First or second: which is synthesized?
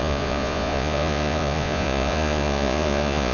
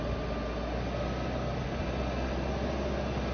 first